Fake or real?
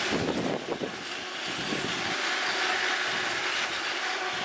real